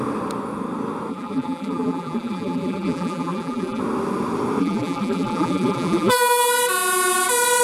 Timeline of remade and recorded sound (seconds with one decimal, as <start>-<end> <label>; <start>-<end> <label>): 0.0-1.1 recorded; 1.1-3.8 remade; 3.8-4.6 recorded; 4.6-6.5 remade; 6.5-7.6 recorded